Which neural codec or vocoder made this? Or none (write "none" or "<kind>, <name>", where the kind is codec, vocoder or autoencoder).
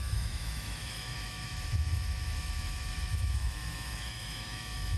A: autoencoder, DAC-VAE